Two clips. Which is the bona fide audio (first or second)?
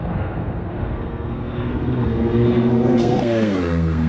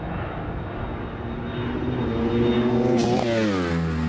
second